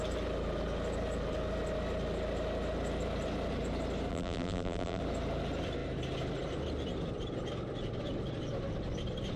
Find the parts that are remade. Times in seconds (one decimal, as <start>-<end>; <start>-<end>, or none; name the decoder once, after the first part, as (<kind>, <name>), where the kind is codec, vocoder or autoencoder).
4.1-5.0 (vocoder, BigVGAN v2)